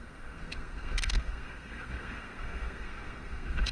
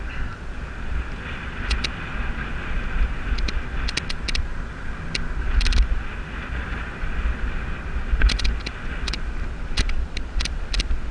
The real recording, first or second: second